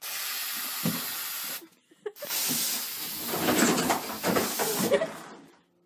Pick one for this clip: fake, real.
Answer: real